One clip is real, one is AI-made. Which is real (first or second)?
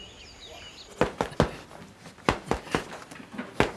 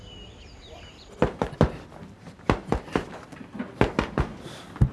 first